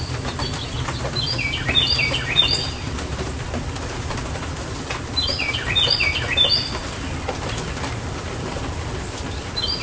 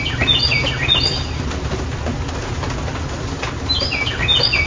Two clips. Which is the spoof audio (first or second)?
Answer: first